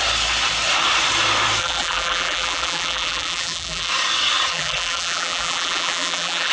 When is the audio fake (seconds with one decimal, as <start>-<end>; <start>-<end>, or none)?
1.6-3.9; 4.5-6.5